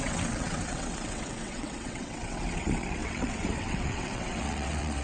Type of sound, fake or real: fake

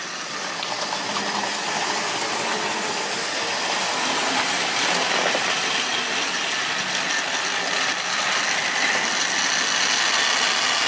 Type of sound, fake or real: real